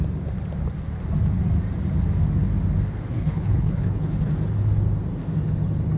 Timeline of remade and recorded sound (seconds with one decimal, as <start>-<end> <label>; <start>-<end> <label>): 0.0-3.1 recorded; 3.1-4.3 remade; 4.3-6.0 recorded

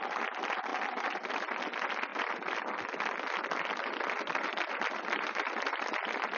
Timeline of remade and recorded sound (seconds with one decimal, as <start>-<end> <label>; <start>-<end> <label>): 0.0-6.4 recorded